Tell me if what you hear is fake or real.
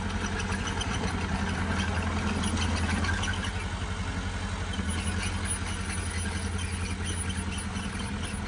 real